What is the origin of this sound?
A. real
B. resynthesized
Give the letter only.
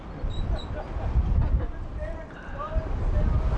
A